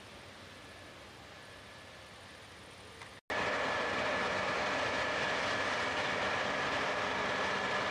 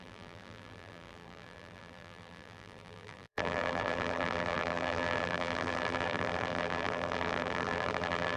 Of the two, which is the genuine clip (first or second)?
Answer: first